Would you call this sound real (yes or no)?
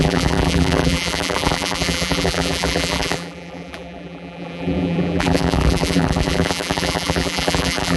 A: no